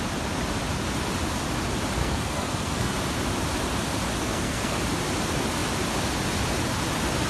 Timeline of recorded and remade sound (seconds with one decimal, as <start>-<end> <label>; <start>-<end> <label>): 0.0-2.0 recorded; 2.0-2.9 remade; 2.9-4.2 recorded; 4.2-4.8 remade; 4.8-7.3 recorded